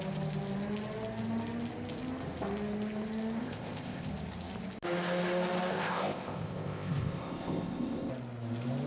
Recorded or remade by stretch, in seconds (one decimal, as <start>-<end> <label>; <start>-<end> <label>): 0.0-3.4 recorded; 3.4-4.1 remade; 4.1-5.7 recorded; 5.7-8.1 remade; 8.1-8.9 recorded